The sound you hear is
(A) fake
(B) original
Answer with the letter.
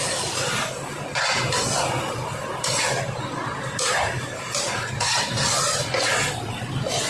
B